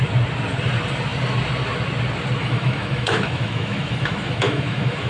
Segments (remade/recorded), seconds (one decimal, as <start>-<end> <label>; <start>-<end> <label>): 0.0-2.4 recorded; 2.4-5.1 remade